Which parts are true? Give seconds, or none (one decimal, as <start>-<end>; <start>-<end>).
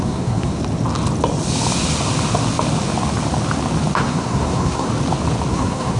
0.6-4.0; 4.9-5.5